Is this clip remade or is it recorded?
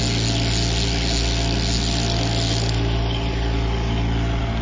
recorded